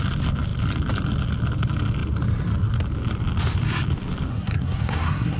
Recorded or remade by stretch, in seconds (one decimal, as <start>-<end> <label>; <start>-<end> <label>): 0.0-4.3 recorded; 4.3-5.4 remade